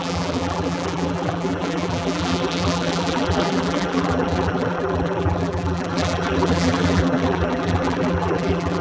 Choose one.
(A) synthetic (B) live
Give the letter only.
A